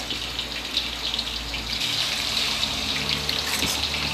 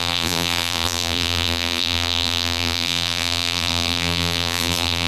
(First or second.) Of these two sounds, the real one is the first